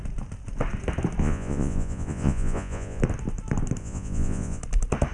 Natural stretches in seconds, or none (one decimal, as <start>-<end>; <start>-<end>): 0.0-1.2; 3.0-3.8; 4.6-5.1